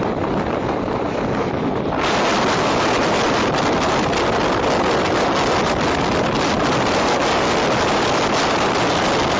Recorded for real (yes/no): yes